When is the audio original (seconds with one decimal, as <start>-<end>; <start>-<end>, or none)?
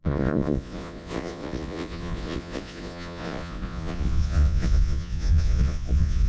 none